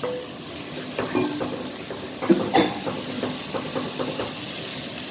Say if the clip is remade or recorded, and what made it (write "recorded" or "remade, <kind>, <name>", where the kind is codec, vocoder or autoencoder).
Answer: recorded